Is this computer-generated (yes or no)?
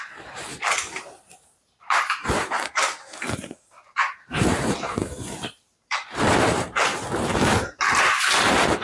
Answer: yes